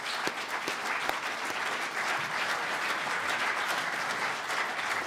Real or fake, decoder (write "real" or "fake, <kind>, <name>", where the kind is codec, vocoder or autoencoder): real